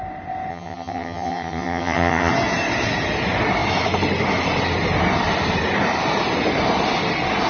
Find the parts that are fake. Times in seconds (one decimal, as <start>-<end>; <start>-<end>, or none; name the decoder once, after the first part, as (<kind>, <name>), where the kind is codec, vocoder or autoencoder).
0.5-2.3 (vocoder, HiFi-GAN)